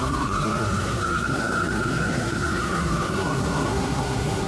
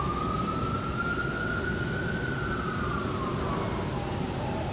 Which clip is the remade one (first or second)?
first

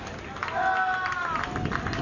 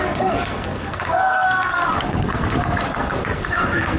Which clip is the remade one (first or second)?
second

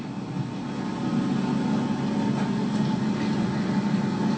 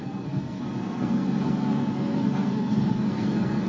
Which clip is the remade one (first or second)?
second